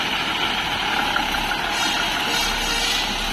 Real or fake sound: real